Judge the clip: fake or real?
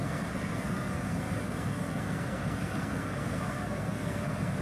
fake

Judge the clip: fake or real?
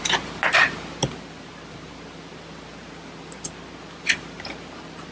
real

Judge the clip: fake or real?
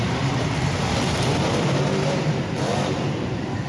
fake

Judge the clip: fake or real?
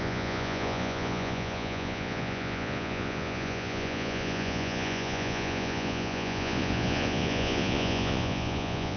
fake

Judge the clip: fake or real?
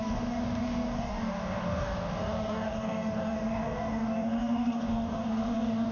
fake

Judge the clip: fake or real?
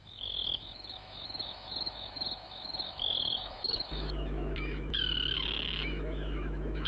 fake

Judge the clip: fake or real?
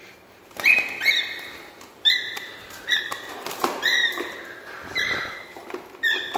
fake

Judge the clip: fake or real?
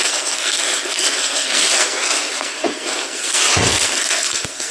fake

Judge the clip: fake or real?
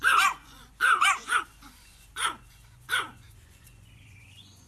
fake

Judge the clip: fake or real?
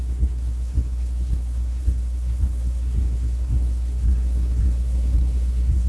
fake